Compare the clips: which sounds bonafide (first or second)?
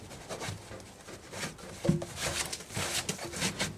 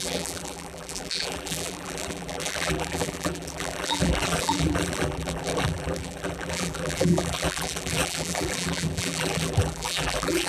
first